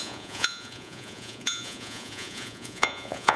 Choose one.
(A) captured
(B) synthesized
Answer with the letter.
B